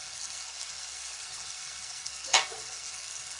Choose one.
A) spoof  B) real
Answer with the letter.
A